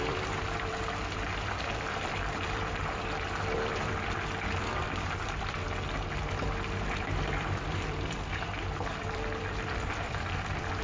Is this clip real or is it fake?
fake